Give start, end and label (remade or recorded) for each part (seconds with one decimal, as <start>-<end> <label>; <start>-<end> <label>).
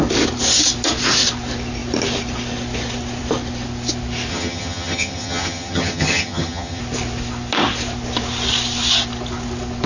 0.0-4.3 recorded; 4.3-6.8 remade; 6.8-9.9 recorded